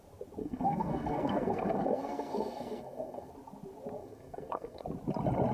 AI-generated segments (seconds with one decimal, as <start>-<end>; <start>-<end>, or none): 0.4-3.3; 4.0-4.8